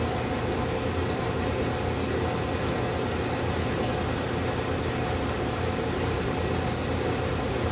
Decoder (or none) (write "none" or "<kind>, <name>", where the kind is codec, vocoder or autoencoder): none